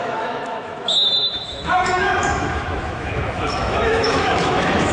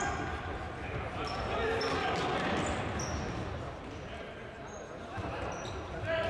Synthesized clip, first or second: first